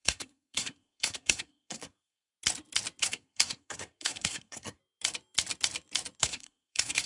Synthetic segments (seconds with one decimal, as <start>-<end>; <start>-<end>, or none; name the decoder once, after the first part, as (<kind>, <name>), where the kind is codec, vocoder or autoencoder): 0.0-2.3 (codec, SNAC); 3.0-4.8; 6.2-7.1